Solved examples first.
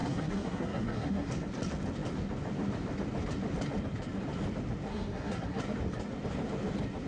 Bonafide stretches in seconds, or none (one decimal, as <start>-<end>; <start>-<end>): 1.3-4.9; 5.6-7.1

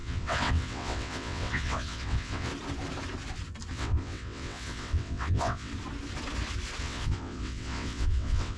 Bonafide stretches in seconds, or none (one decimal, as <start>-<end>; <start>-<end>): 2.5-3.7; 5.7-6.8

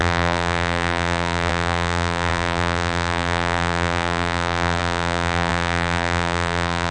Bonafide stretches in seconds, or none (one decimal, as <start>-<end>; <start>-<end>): none